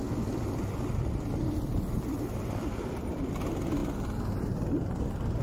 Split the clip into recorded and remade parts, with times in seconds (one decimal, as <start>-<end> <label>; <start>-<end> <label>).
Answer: 0.0-3.2 recorded; 3.2-5.4 remade